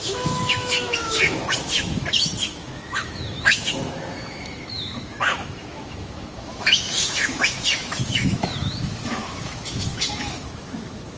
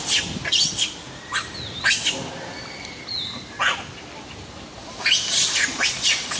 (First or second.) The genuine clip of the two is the second